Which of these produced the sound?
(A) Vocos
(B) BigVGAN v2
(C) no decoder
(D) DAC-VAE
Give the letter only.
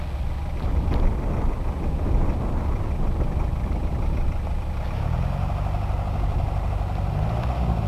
C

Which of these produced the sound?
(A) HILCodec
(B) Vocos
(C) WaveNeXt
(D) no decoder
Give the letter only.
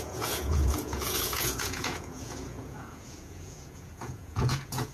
B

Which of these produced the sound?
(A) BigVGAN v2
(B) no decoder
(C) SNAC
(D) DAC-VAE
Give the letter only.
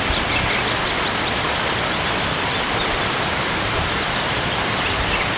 B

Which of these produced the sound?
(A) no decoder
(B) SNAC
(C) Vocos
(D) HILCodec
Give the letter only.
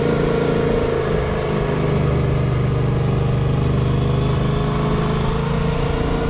A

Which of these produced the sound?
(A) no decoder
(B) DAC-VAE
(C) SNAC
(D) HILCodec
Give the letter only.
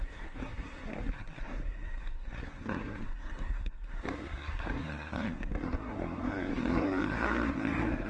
C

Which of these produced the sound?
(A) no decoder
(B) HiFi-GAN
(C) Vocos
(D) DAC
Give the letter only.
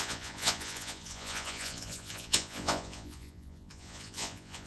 C